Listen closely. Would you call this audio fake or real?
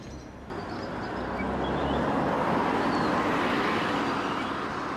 real